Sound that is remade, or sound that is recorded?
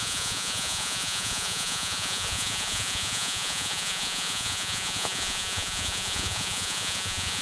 remade